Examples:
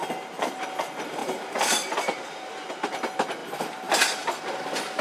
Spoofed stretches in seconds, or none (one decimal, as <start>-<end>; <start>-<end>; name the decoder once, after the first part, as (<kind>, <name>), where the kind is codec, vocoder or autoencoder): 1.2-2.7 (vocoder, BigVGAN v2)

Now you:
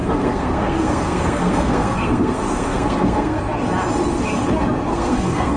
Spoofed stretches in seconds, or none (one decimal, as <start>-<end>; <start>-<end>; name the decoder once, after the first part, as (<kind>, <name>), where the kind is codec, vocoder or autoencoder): 0.0-3.4 (codec, SNAC); 4.9-5.6

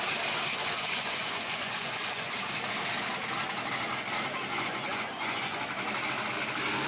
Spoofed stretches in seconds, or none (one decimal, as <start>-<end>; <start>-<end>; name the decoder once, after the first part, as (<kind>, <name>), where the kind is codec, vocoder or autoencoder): 0.5-2.3 (vocoder, Vocos); 4.5-5.6